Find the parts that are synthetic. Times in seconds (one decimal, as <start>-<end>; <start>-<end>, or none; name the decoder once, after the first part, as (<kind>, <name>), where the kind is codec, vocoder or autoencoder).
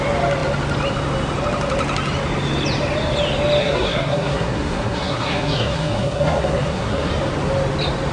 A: 3.6-7.1 (codec, SNAC)